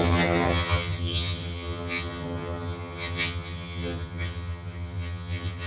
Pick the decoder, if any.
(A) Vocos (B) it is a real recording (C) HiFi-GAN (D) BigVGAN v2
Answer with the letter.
C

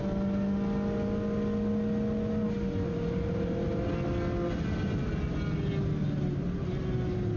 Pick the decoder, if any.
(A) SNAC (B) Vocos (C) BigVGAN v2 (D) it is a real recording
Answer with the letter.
D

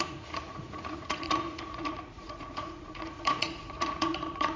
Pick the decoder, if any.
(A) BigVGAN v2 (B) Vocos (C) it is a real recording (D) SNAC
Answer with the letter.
B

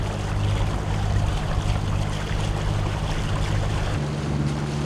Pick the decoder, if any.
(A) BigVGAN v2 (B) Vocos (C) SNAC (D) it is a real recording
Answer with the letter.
D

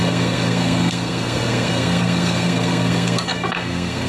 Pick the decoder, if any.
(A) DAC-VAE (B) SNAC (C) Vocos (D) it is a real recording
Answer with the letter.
B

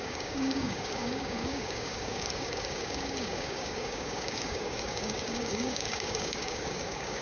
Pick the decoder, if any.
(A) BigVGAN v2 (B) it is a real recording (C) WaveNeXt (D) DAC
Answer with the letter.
D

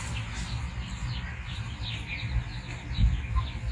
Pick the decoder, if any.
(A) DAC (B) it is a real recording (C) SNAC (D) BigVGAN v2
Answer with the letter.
B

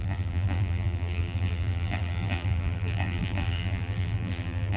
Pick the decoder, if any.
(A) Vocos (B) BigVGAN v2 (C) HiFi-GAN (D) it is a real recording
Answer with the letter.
B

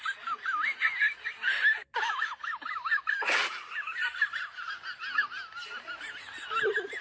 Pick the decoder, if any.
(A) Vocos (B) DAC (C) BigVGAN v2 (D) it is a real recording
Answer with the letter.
D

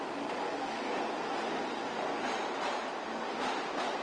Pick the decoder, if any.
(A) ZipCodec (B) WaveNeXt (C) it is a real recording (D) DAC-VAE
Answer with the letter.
C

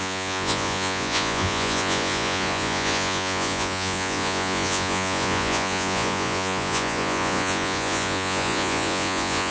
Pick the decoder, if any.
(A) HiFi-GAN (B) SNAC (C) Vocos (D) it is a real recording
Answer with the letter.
C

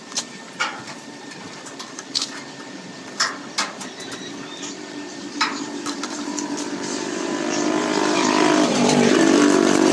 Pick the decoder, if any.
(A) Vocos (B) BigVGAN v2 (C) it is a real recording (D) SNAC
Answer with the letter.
B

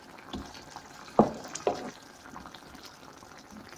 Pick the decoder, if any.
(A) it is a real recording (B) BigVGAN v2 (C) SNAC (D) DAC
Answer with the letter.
A